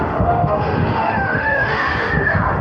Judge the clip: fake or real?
fake